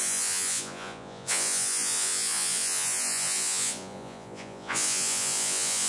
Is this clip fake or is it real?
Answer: fake